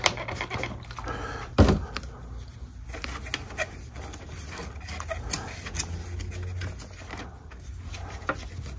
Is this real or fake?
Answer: real